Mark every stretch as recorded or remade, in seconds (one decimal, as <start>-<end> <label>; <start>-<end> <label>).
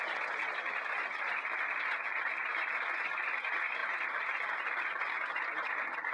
0.0-6.1 recorded